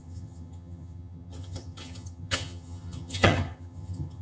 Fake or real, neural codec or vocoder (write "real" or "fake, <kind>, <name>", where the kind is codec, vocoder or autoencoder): fake, vocoder, HiFi-GAN